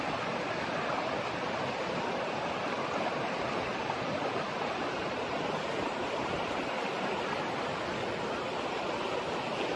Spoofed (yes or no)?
no